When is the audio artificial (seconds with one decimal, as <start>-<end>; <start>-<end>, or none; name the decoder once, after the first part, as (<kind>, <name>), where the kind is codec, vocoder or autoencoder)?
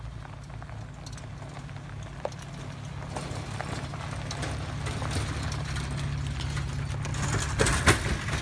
none